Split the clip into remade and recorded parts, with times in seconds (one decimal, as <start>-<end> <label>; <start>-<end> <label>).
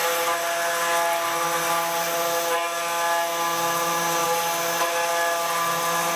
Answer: 0.0-6.2 recorded